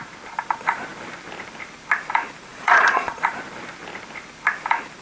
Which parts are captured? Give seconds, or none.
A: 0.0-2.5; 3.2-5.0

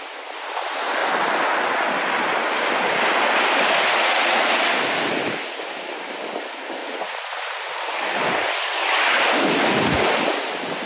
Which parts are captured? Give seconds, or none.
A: 0.0-4.0; 4.6-6.8; 7.4-10.9

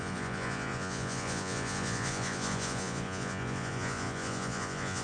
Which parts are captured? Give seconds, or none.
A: none

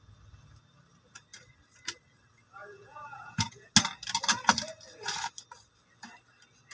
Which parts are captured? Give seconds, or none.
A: 0.0-2.6; 3.7-6.7

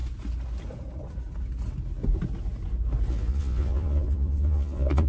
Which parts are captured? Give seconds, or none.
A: 0.0-3.1

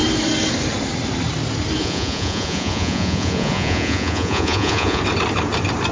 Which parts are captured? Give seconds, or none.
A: 0.0-1.8; 5.0-5.9